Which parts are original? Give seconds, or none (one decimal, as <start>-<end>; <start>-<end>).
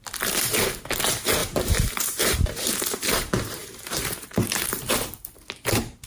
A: 0.0-1.4; 4.9-6.1